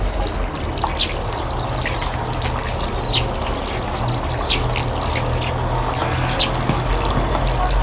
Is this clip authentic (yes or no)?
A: yes